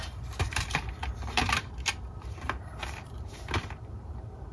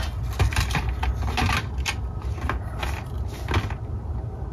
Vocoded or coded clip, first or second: first